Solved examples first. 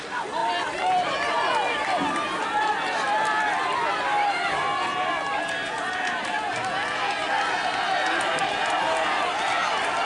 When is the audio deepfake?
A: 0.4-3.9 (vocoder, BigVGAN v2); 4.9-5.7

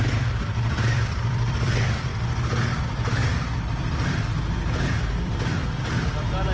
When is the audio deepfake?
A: 0.0-2.1 (vocoder, BigVGAN v2); 2.8-6.5

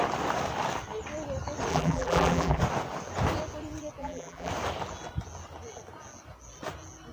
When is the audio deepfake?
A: 1.7-2.6 (vocoder, BigVGAN v2); 4.0-4.5

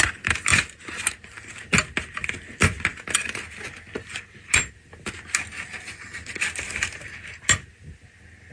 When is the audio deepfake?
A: none

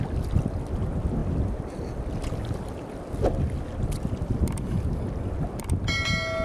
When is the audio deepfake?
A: none